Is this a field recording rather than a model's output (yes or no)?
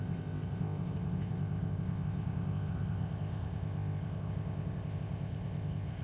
no